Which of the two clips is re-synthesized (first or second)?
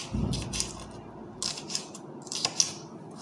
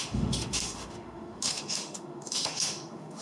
second